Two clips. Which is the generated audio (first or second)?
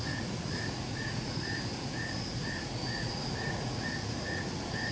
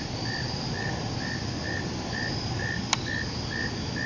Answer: first